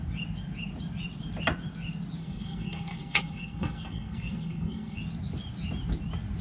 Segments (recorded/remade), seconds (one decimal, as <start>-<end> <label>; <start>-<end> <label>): 0.0-2.2 recorded; 2.2-5.0 remade; 5.0-6.4 recorded